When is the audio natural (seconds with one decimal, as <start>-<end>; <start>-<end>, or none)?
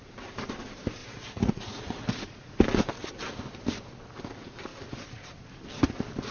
0.0-1.0; 2.5-6.3